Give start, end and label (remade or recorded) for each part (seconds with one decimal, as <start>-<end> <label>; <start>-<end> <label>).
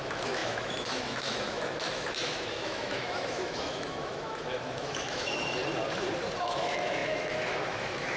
0.0-5.6 remade; 5.6-6.4 recorded; 6.4-8.2 remade